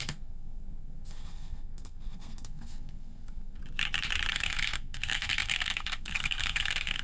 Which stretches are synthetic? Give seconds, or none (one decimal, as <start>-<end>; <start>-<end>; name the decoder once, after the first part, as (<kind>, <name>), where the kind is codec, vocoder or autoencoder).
0.0-3.6 (codec, SNAC); 4.3-7.0